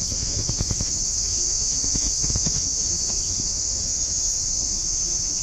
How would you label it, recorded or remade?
remade